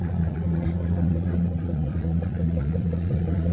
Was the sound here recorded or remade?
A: remade